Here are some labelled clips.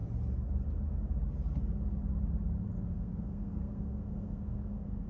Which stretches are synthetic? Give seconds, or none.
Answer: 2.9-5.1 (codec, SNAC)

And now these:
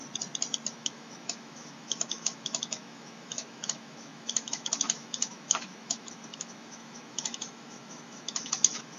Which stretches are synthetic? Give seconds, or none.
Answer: 0.7-9.0 (autoencoder, DAC-VAE)

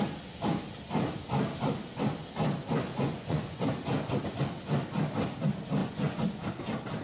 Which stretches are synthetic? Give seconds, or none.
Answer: 2.9-3.6 (vocoder, Vocos); 5.8-6.5